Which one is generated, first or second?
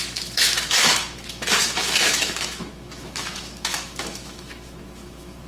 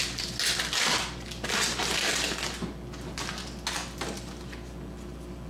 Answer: first